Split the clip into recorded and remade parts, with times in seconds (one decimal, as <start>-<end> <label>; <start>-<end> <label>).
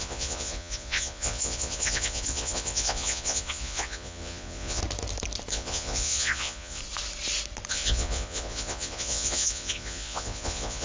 0.0-4.8 remade; 4.8-5.5 recorded; 5.5-6.8 remade; 6.8-7.7 recorded; 7.7-10.8 remade